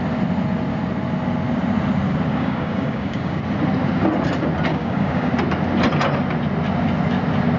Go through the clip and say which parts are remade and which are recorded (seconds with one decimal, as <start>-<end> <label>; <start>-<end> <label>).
0.0-2.3 recorded; 2.3-3.4 remade; 3.4-4.7 recorded; 4.7-5.3 remade; 5.3-7.6 recorded